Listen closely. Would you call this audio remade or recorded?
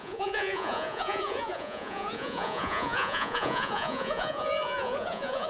remade